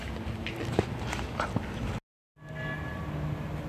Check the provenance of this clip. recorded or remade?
recorded